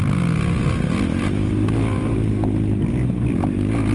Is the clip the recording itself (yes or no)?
yes